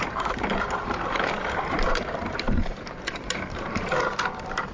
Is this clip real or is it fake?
fake